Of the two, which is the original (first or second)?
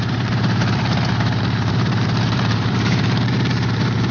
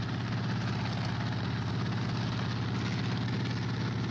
second